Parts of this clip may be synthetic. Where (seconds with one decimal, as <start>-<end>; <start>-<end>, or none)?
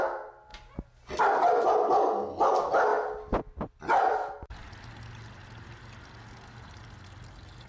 none